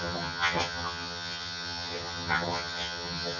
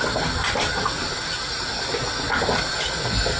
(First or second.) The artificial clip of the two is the first